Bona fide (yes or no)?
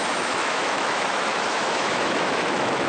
no